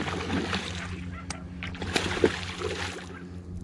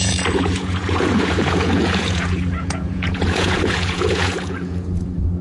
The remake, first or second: second